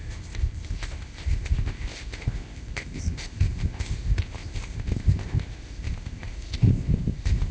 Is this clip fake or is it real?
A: fake